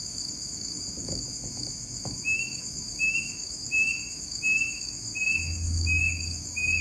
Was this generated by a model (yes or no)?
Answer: yes